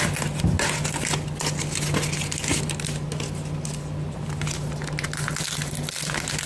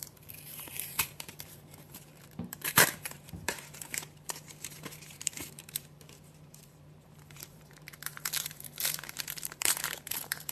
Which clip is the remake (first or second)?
second